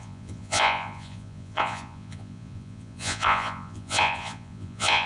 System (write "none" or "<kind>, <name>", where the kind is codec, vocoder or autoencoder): vocoder, Vocos